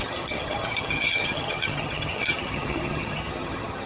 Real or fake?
fake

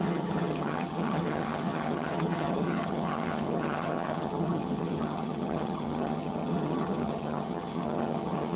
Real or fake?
fake